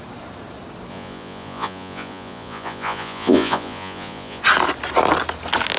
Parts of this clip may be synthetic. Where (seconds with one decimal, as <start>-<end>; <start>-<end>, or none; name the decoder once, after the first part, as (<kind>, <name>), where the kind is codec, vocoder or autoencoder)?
0.9-4.4 (vocoder, Vocos)